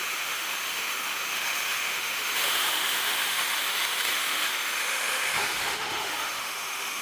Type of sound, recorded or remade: remade